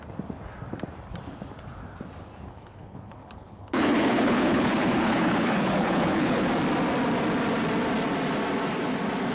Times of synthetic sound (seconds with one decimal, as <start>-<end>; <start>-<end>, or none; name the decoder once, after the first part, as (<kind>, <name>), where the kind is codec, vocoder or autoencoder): 2.5-6.5 (codec, HILCodec)